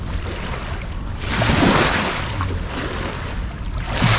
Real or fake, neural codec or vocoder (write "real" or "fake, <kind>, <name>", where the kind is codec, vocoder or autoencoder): real